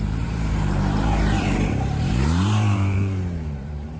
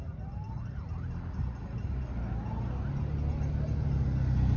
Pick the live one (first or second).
second